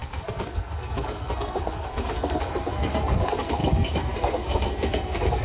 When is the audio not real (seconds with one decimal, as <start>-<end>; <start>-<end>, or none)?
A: 0.0-5.4